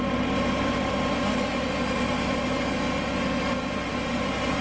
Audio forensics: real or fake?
real